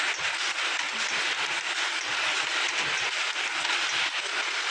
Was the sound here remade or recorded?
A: recorded